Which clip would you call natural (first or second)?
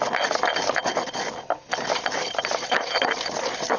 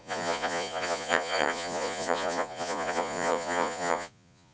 first